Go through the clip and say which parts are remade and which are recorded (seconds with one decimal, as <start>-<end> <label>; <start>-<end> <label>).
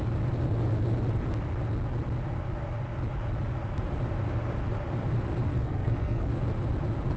0.0-5.5 recorded; 5.5-6.3 remade; 6.3-7.2 recorded